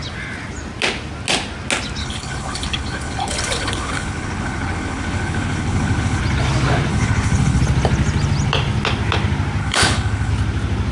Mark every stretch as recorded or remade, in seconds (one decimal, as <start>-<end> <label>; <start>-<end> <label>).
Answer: 0.0-2.0 recorded; 2.0-6.2 remade; 6.2-6.9 recorded; 6.9-7.6 remade; 7.6-9.6 recorded; 9.6-10.3 remade; 10.3-10.9 recorded